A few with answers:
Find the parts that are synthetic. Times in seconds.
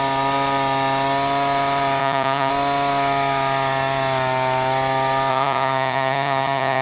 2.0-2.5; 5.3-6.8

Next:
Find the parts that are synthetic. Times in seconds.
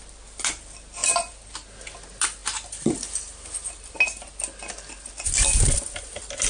none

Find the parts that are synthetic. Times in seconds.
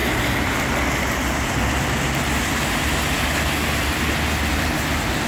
none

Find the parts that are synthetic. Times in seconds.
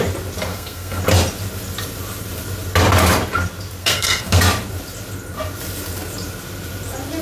0.5-1.0; 3.8-4.4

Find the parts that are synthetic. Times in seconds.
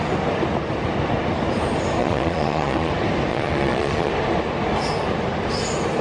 2.0-2.9; 3.3-4.1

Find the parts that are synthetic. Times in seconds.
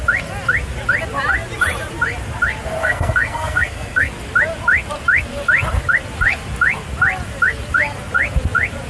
2.8-4.1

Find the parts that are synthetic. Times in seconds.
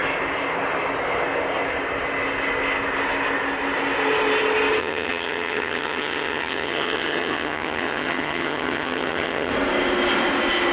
4.8-9.5